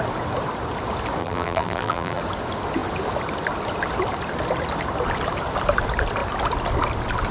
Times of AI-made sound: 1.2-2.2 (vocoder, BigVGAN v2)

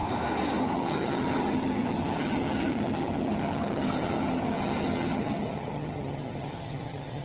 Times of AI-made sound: 0.6-7.2 (vocoder, HiFi-GAN)

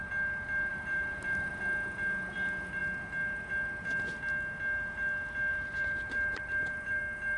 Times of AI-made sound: 0.7-1.5 (vocoder, BigVGAN v2); 5.5-7.0

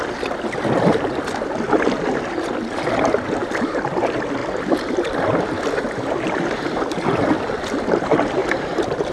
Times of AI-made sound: 8.4-9.1 (vocoder, BigVGAN v2)

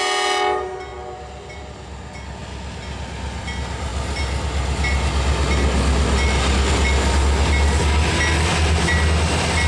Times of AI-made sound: none